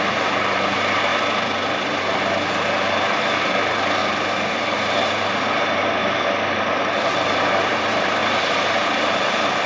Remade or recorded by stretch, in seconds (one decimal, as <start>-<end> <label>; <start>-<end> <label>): 0.0-1.1 remade; 1.1-3.5 recorded; 3.5-4.0 remade; 4.0-4.5 recorded; 4.5-6.0 remade; 6.0-6.7 recorded; 6.7-8.2 remade; 8.2-9.7 recorded